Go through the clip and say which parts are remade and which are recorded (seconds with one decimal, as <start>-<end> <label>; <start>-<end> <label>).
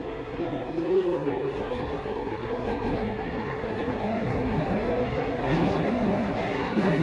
0.0-7.0 remade